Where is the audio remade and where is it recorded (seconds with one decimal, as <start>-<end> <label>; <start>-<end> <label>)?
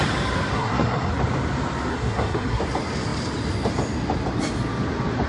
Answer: 0.0-0.5 recorded; 0.5-1.1 remade; 1.1-1.9 recorded; 1.9-2.6 remade; 2.6-5.3 recorded